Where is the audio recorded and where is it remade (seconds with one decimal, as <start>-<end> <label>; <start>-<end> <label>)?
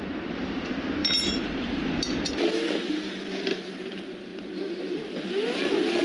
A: 0.0-1.0 recorded; 1.0-2.0 remade; 2.0-6.0 recorded